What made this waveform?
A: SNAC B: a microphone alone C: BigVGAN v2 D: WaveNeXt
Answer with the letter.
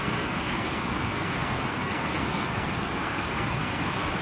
A